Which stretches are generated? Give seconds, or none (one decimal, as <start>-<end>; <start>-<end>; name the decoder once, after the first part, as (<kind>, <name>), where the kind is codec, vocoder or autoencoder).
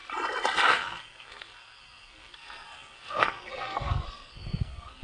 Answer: 0.7-5.0 (codec, SNAC)